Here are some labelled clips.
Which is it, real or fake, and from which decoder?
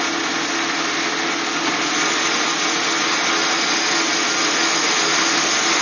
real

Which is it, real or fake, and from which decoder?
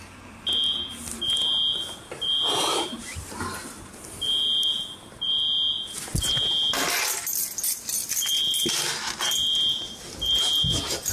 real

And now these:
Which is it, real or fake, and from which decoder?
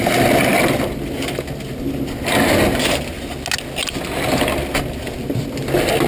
real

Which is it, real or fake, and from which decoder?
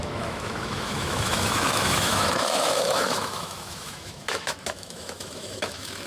fake, autoencoder, DAC-VAE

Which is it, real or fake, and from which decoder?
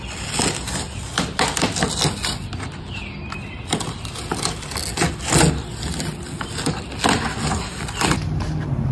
real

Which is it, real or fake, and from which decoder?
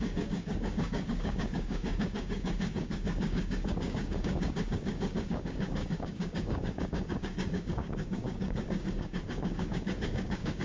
fake, codec, DAC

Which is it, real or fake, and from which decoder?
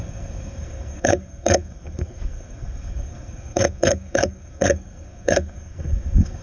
fake, codec, SNAC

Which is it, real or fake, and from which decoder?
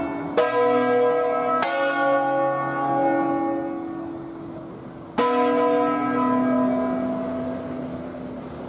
real